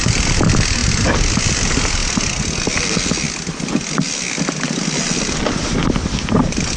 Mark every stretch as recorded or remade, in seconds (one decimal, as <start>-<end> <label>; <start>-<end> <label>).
0.0-6.8 recorded